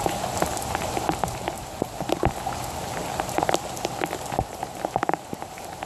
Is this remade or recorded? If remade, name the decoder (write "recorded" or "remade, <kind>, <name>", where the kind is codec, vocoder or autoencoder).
recorded